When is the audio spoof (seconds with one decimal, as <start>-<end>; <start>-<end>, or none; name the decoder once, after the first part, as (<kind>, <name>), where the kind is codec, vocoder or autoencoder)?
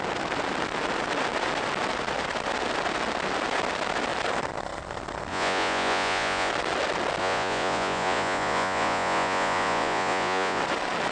5.3-6.5 (vocoder, Vocos); 7.2-10.6